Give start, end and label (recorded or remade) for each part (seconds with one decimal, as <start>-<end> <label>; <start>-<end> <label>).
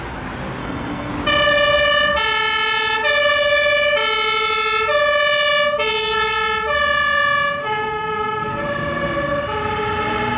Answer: 0.0-0.6 recorded; 0.6-1.1 remade; 1.1-7.6 recorded; 7.6-8.6 remade; 8.6-10.4 recorded